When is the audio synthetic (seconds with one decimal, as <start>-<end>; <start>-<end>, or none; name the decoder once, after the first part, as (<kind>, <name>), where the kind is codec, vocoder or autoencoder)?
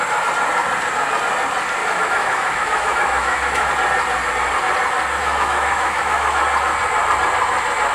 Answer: 1.8-3.7 (autoencoder, DAC-VAE); 5.2-6.4